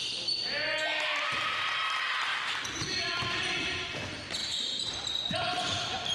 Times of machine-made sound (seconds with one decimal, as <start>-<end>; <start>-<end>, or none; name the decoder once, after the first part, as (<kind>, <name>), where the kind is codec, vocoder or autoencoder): 2.3-3.9 (vocoder, BigVGAN v2); 4.4-4.9